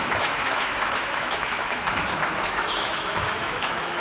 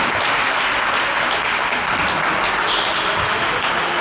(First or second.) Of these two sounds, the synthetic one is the first